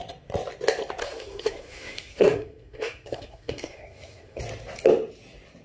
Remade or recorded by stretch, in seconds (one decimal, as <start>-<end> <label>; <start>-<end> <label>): 0.0-1.0 recorded; 1.0-4.4 remade; 4.4-5.6 recorded